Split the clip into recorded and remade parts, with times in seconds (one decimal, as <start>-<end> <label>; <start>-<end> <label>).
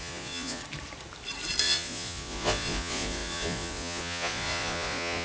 0.0-0.6 remade; 0.6-1.6 recorded; 1.6-5.2 remade